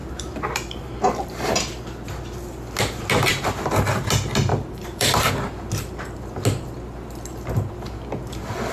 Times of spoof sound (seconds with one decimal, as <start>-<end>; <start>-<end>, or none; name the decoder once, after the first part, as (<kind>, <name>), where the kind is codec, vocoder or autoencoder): 0.0-1.6 (vocoder, BigVGAN v2); 4.5-5.3